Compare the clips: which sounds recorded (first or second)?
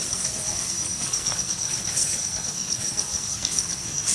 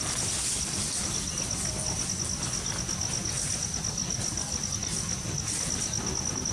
second